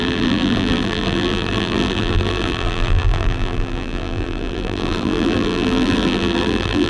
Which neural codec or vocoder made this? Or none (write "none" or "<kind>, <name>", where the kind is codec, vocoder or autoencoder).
vocoder, BigVGAN v2